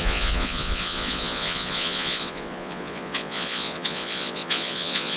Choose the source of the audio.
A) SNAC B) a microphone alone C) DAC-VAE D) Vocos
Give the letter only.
D